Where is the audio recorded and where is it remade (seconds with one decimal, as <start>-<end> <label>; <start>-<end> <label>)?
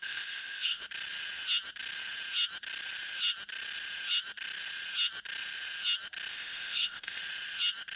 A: 0.0-0.8 remade; 0.8-6.3 recorded; 6.3-7.2 remade; 7.2-8.0 recorded